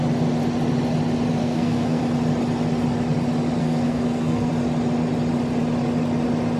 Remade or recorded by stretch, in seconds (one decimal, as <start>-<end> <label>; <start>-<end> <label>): 0.0-1.4 recorded; 1.4-2.0 remade; 2.0-3.6 recorded; 3.6-4.5 remade; 4.5-6.6 recorded